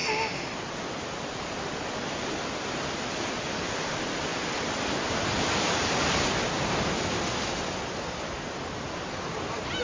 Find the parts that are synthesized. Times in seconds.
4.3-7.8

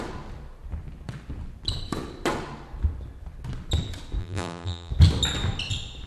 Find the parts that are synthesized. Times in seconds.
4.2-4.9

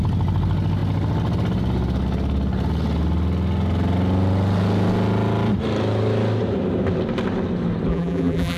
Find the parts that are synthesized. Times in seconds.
7.9-8.6

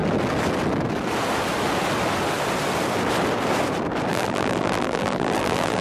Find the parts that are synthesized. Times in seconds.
4.1-5.8

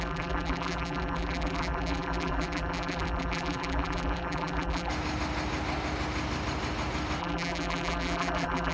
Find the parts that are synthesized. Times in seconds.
0.0-4.9; 7.2-8.7

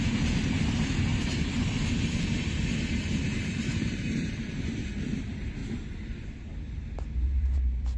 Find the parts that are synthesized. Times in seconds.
0.0-1.1; 1.8-5.6; 6.7-8.0

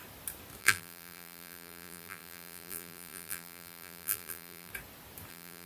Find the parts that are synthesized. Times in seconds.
0.6-4.7; 5.3-5.7

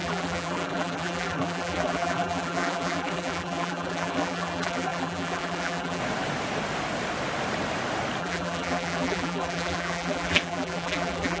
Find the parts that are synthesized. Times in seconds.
0.0-6.0; 8.2-11.4